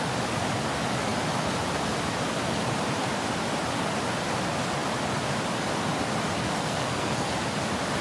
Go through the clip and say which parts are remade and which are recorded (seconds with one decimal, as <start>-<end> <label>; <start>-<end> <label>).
0.0-6.4 recorded; 6.4-7.3 remade; 7.3-8.0 recorded